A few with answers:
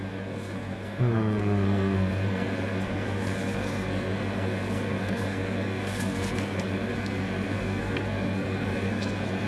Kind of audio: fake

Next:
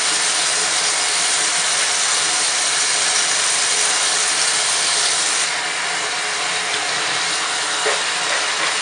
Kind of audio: fake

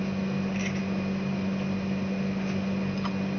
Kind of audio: real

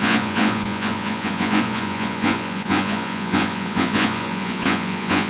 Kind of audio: fake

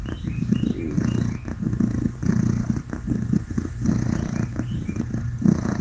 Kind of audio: real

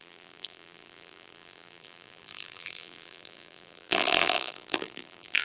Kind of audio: fake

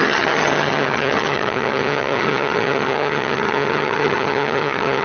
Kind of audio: fake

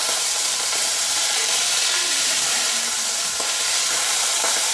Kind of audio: fake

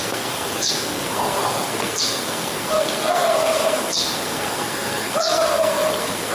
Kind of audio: fake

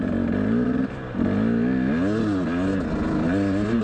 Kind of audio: real